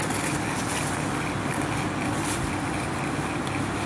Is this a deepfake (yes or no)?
no